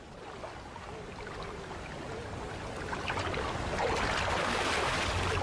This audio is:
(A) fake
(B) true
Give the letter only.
B